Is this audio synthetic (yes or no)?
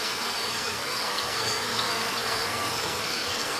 yes